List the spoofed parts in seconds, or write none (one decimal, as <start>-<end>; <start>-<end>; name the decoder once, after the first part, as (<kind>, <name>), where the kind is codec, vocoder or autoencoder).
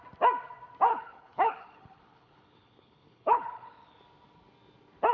0.9-4.0 (codec, HILCodec)